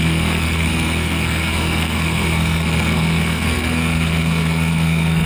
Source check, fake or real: fake